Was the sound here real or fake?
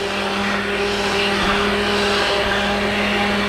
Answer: real